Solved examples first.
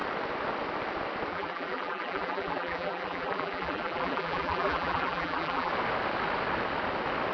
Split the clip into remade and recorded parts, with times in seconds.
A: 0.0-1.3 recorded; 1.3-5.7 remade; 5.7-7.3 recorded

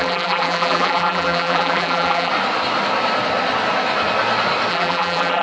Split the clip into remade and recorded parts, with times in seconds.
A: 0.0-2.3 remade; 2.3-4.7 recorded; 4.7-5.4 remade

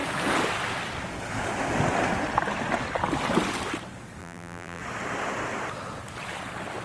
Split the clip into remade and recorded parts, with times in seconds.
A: 0.0-4.2 recorded; 4.2-4.8 remade; 4.8-6.8 recorded

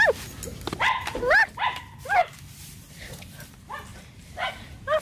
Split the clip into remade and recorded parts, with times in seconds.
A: 0.0-0.5 recorded; 0.5-1.2 remade; 1.2-2.2 recorded; 2.2-2.9 remade; 2.9-3.9 recorded; 3.9-4.5 remade; 4.5-5.0 recorded

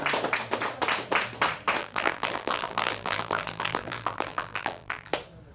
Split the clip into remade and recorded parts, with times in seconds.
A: 0.0-1.8 recorded; 1.8-5.1 remade; 5.1-5.5 recorded

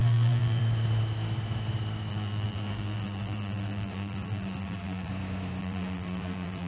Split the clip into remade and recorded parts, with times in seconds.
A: 0.0-0.6 remade; 0.6-2.1 recorded; 2.1-5.1 remade; 5.1-5.6 recorded; 5.6-6.7 remade

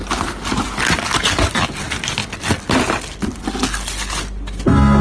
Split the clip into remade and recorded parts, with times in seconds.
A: 0.0-5.0 recorded

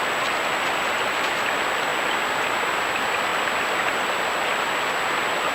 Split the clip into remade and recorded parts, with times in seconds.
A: 0.0-5.5 recorded